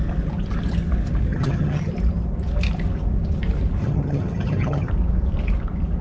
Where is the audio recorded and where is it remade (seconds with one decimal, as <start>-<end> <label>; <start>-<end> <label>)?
0.0-1.3 recorded; 1.3-1.9 remade; 1.9-3.8 recorded; 3.8-4.9 remade; 4.9-6.0 recorded